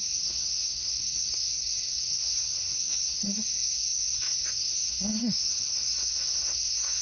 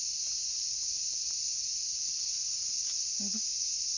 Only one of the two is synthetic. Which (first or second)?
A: first